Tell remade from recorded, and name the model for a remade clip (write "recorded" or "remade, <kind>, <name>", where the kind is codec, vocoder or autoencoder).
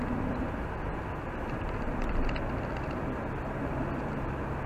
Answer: recorded